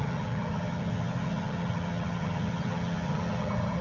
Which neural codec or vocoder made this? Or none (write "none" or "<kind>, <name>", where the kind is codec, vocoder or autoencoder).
vocoder, HiFi-GAN